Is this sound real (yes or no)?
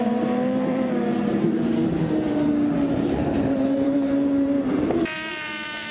no